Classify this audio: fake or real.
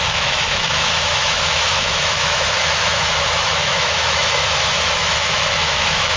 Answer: fake